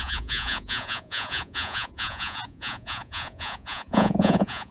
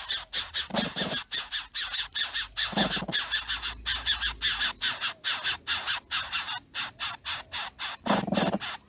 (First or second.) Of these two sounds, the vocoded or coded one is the first